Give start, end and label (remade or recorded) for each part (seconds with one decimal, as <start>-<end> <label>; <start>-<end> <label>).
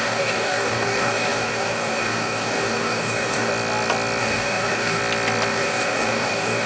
0.0-3.5 remade; 3.5-4.2 recorded; 4.2-5.0 remade; 5.0-5.5 recorded; 5.5-6.7 remade